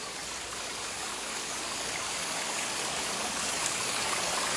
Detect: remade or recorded remade